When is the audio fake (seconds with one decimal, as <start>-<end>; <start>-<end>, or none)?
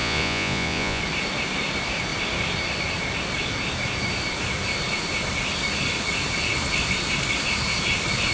0.0-1.0